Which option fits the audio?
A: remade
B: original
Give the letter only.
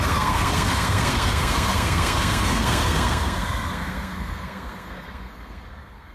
A